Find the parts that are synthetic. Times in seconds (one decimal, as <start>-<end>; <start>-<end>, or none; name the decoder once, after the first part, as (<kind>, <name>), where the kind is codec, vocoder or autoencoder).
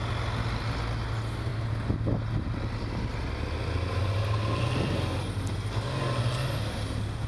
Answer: none